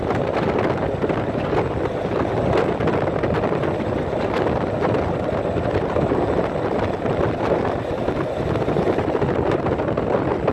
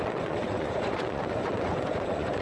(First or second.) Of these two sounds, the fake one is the second